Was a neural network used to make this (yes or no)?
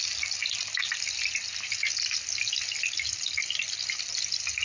no